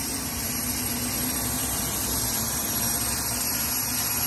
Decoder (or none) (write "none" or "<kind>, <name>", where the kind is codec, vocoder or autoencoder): none